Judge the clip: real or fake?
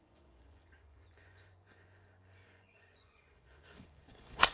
fake